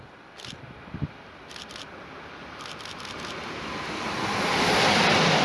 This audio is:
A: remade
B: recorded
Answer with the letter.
B